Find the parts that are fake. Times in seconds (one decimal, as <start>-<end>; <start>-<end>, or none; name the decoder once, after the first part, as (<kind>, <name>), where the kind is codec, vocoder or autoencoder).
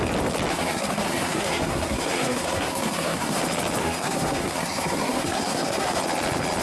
0.5-3.4 (codec, SNAC); 3.8-6.0